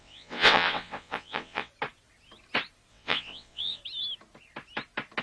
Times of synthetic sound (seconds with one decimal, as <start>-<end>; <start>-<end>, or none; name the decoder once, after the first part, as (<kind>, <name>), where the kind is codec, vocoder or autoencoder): 0.0-1.7 (vocoder, WaveNeXt); 2.9-3.8